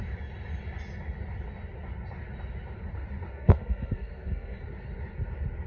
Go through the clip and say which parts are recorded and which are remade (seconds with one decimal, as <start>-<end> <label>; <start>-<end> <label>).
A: 0.0-3.3 recorded; 3.3-4.6 remade; 4.6-5.7 recorded